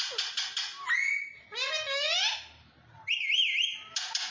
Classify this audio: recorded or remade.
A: recorded